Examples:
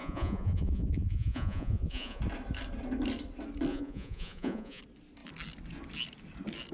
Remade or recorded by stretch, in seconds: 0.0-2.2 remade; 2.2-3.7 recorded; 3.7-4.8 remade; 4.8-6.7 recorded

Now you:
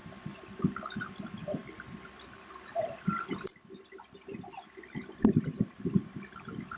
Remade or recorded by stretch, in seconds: 0.0-6.8 recorded

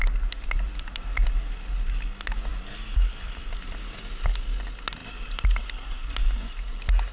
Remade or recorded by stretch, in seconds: 0.0-7.1 recorded

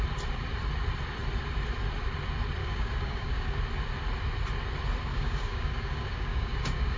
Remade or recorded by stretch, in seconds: 0.0-2.6 recorded; 2.6-3.6 remade; 3.6-5.1 recorded; 5.1-7.0 remade

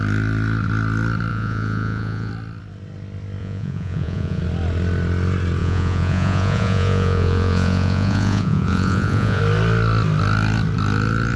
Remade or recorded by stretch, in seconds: 0.0-1.3 recorded; 1.3-2.3 remade; 2.3-3.4 recorded; 3.4-4.4 remade; 4.4-5.6 recorded; 5.6-9.4 remade; 9.4-11.4 recorded

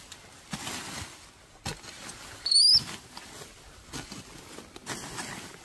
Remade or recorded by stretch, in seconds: 0.0-5.6 recorded